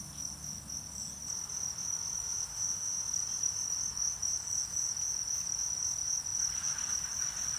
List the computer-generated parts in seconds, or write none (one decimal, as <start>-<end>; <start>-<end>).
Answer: 2.5-3.0